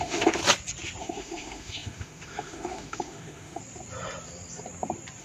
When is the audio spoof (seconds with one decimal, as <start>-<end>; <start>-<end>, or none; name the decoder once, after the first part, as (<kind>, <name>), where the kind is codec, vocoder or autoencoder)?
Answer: 0.0-0.4 (autoencoder, DAC-VAE); 1.0-3.6